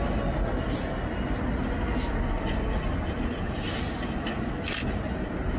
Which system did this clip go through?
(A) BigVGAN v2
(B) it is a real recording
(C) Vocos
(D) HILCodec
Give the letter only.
B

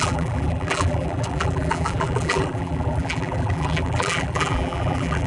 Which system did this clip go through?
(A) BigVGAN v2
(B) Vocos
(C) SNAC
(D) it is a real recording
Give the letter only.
A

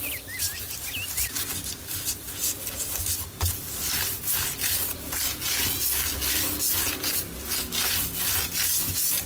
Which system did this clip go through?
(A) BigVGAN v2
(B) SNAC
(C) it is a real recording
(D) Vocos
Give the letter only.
C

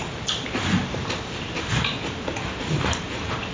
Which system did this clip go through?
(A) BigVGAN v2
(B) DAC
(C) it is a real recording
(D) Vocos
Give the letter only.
A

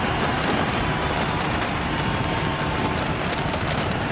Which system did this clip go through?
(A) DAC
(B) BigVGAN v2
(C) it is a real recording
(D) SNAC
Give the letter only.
B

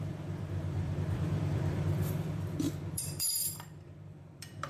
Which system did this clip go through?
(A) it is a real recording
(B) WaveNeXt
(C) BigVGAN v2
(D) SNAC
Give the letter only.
C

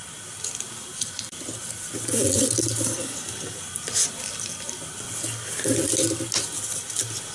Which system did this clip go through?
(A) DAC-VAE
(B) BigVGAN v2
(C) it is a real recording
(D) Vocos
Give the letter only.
C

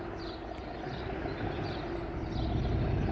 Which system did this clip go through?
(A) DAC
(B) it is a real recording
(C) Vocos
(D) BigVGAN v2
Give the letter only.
B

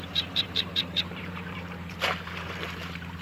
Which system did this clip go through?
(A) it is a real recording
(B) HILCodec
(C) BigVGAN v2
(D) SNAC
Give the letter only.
C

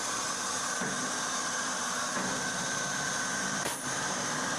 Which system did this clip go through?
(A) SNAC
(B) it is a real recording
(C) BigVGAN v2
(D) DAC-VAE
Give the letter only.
C